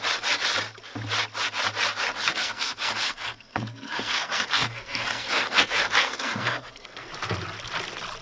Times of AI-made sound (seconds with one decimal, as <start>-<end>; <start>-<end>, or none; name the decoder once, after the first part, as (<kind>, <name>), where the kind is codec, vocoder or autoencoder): 2.2-7.1 (codec, SNAC)